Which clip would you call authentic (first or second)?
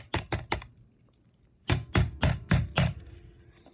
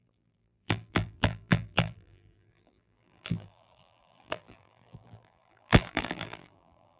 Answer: first